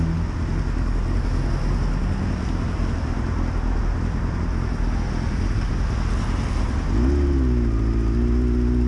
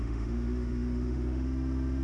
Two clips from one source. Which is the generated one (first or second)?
second